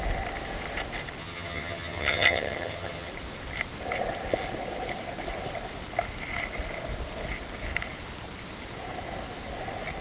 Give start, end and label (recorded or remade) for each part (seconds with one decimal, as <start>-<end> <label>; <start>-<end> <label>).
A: 0.0-1.2 recorded; 1.2-3.1 remade; 3.1-10.0 recorded